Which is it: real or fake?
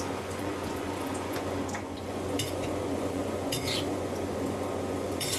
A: fake